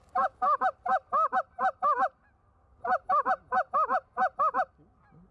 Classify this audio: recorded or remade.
recorded